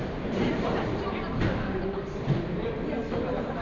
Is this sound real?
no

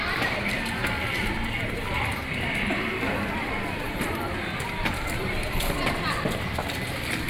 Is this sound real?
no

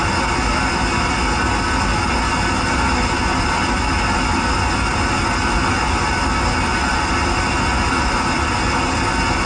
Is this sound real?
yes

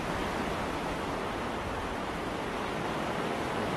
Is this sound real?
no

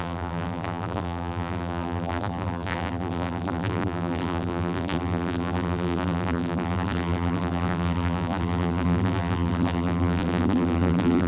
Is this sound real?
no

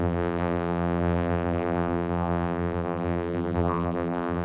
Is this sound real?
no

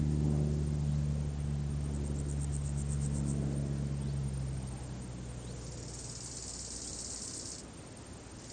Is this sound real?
yes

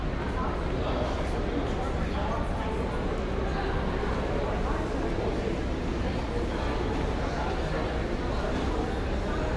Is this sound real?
yes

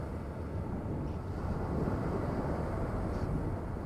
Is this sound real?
yes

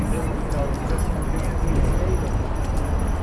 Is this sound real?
yes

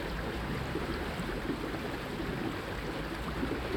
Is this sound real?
yes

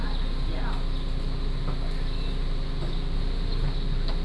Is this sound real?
yes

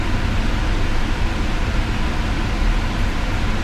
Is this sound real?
yes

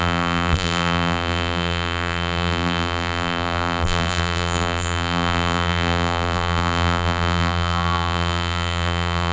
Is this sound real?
no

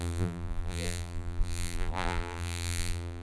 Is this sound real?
no